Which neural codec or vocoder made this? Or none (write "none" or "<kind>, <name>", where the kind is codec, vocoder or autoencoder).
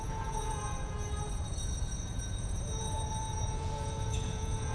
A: vocoder, Vocos